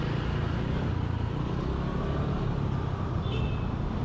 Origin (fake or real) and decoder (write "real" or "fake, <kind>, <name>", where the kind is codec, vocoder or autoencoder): real